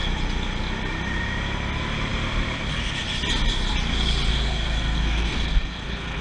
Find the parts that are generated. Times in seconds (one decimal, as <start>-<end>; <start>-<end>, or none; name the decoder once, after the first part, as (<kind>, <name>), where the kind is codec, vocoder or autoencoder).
4.3-6.2 (codec, SNAC)